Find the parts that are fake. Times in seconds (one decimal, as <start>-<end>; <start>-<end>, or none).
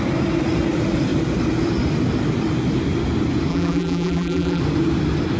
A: 3.5-4.6